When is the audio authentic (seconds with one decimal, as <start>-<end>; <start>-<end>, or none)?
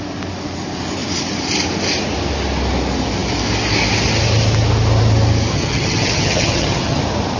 0.0-5.5; 7.0-7.4